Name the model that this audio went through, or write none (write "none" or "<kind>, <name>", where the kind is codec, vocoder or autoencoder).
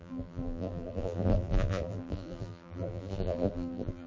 vocoder, BigVGAN v2